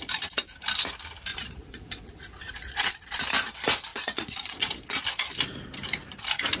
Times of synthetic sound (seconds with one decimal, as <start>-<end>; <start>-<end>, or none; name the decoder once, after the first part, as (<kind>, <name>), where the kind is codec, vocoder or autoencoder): 1.3-3.2 (vocoder, Vocos); 3.9-4.7